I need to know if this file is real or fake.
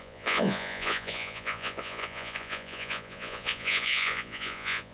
fake